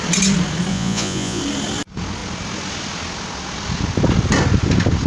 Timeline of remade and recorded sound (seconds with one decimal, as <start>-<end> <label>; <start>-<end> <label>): 0.0-0.7 recorded; 0.7-1.4 remade; 1.4-5.1 recorded